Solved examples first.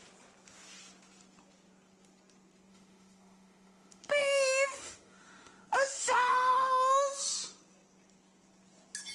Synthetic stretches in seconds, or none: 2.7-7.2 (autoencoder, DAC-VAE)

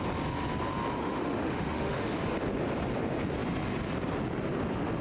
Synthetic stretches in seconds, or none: 1.0-2.2 (autoencoder, DAC-VAE)

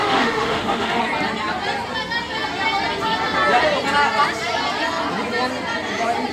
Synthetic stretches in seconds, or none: 0.0-1.0 (autoencoder, DAC-VAE)

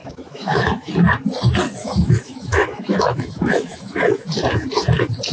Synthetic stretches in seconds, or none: 0.0-0.9 (autoencoder, DAC-VAE); 1.8-4.2

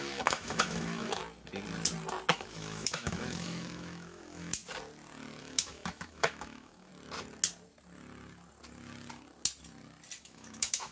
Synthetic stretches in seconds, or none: 0.0-1.2 (autoencoder, DAC-VAE); 2.3-4.6; 5.4-6.9; 10.2-10.9

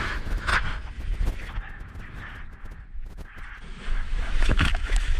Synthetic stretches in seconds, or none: 0.0-0.5 (autoencoder, DAC-VAE); 3.6-5.2

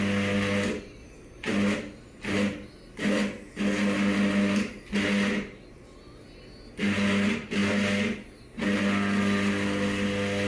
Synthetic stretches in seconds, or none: none